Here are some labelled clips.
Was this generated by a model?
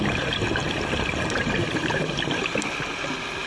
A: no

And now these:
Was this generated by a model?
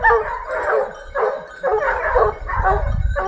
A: no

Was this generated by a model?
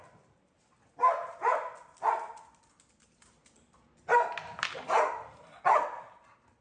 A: no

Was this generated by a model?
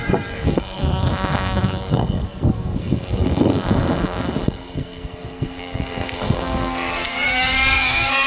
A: yes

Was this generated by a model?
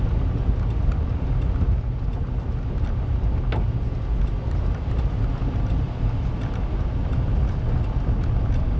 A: no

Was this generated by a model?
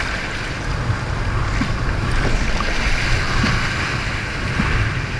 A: no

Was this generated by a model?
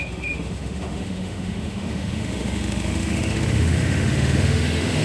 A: yes